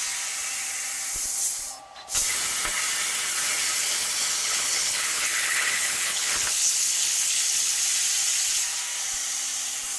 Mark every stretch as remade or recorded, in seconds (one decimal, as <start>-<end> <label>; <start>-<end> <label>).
0.0-4.4 recorded; 4.4-7.8 remade; 7.8-10.0 recorded